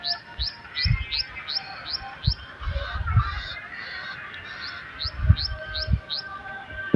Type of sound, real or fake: real